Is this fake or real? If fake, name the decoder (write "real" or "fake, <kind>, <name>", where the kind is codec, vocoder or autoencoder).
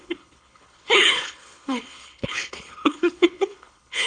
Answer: fake, codec, HILCodec